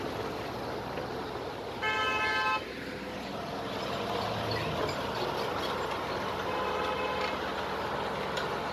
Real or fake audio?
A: real